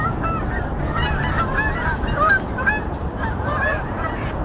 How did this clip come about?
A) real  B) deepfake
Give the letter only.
B